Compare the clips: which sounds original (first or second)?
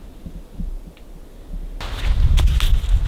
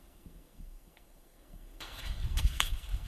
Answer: first